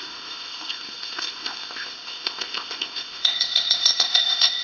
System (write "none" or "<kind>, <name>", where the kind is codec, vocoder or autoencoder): codec, ZipCodec